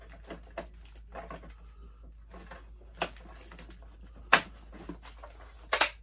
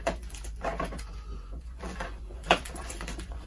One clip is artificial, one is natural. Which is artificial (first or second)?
second